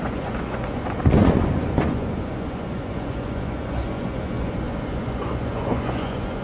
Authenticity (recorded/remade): remade